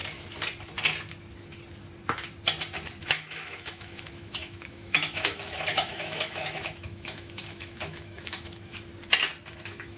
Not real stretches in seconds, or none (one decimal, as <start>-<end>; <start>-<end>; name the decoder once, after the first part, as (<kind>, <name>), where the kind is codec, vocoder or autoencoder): 3.0-8.9 (autoencoder, DAC-VAE); 9.5-10.0